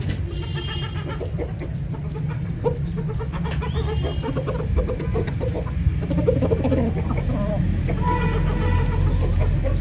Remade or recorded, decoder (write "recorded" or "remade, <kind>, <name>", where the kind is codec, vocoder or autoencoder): recorded